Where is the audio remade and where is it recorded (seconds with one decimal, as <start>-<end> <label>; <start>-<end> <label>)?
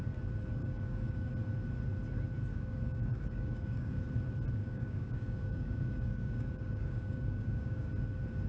0.0-0.6 recorded; 0.6-1.3 remade; 1.3-2.5 recorded; 2.5-4.0 remade; 4.0-4.6 recorded; 4.6-7.9 remade; 7.9-8.5 recorded